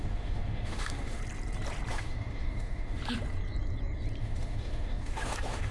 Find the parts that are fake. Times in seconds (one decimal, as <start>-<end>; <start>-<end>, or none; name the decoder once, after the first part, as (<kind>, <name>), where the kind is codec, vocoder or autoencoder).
0.0-1.2 (autoencoder, DAC-VAE); 1.9-3.0; 4.2-5.7